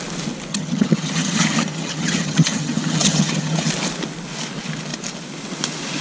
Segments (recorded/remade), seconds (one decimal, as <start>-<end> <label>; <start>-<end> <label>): 0.0-0.5 recorded; 0.5-3.7 remade; 3.7-6.0 recorded